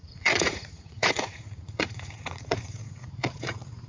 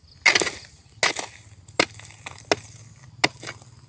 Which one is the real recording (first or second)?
second